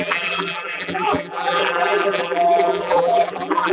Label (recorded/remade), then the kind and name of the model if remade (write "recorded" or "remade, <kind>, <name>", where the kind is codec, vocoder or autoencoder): remade, vocoder, BigVGAN v2